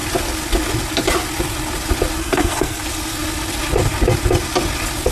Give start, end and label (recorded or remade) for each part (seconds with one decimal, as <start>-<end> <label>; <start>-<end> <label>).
0.0-2.2 recorded; 2.2-2.8 remade; 2.8-5.1 recorded